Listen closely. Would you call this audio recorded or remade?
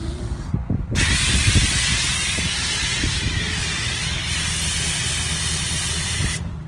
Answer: recorded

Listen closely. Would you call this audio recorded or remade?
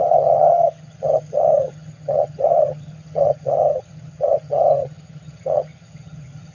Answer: remade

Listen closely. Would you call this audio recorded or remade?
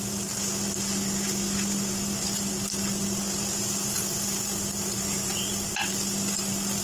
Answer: recorded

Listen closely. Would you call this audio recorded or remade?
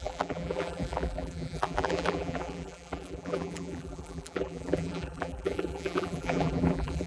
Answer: remade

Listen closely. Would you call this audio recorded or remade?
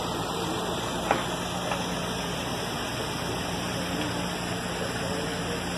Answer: recorded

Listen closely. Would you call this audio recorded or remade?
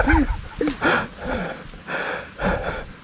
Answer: recorded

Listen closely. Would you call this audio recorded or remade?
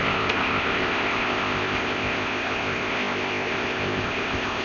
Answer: remade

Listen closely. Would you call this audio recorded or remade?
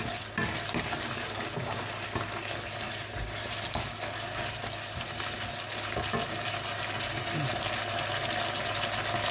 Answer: recorded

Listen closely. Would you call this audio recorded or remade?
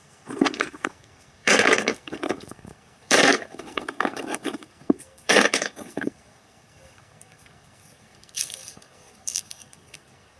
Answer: remade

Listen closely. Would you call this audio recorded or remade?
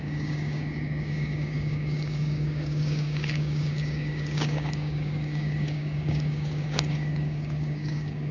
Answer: remade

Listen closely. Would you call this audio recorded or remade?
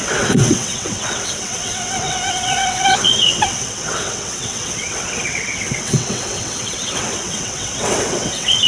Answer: remade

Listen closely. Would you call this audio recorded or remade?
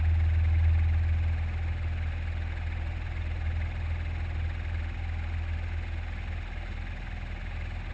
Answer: recorded